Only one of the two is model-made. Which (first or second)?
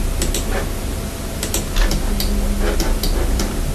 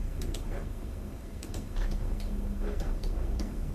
second